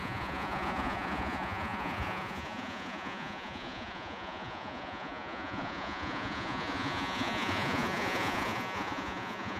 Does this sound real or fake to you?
fake